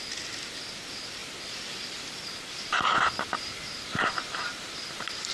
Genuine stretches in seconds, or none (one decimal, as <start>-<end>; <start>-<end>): 0.0-1.2; 4.4-5.3